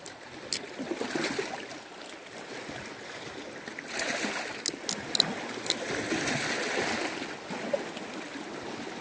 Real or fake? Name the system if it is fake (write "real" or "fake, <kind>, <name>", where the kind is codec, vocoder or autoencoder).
real